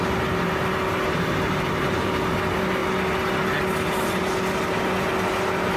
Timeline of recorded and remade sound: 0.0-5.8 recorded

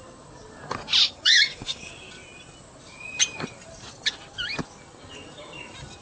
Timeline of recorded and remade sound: 0.0-1.0 recorded; 1.0-1.9 remade; 1.9-6.0 recorded

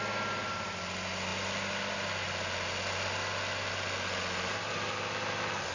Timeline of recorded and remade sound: 0.0-5.7 recorded

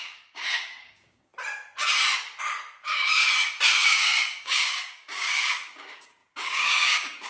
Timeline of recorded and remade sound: 0.0-1.3 remade; 1.3-2.8 recorded; 2.8-3.2 remade; 3.2-3.8 recorded; 3.8-7.3 remade

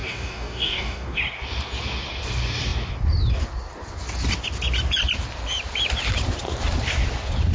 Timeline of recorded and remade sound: 0.0-1.2 remade; 1.2-7.5 recorded